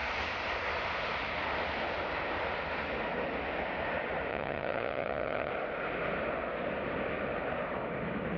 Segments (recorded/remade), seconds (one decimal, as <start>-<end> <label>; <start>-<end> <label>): 0.0-4.3 recorded; 4.3-5.5 remade; 5.5-8.4 recorded